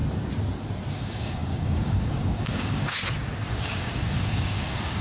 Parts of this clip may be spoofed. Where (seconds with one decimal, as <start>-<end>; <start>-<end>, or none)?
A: 0.9-3.0; 3.5-5.0

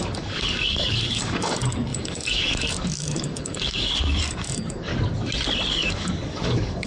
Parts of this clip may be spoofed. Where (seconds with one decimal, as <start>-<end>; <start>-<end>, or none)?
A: 0.0-4.9; 5.7-6.9

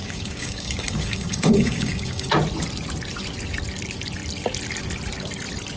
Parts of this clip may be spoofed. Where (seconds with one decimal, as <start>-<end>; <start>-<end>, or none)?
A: 0.0-2.3